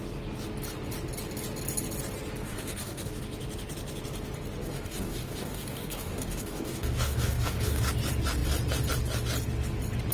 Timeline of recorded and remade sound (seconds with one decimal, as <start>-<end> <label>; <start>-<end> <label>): 0.0-2.4 recorded; 2.4-3.1 remade; 3.1-4.6 recorded; 4.6-7.9 remade; 7.9-10.1 recorded